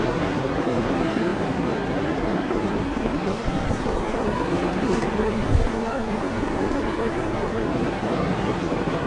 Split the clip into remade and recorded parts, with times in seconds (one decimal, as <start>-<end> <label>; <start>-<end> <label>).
0.0-9.1 remade